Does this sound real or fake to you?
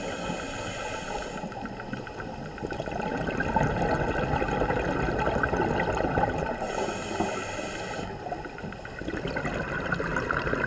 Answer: real